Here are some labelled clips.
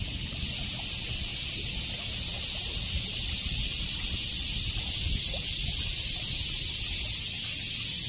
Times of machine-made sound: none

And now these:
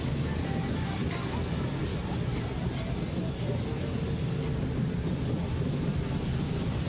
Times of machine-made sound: none

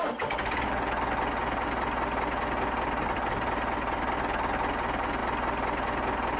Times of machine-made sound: none

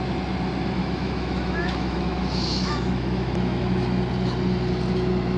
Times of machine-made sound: 0.8-4.0 (autoencoder, DAC-VAE)